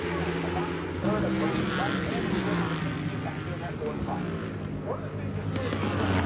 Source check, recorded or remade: recorded